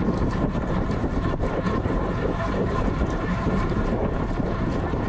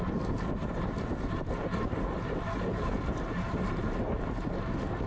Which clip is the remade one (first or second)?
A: first